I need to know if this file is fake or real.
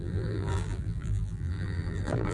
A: fake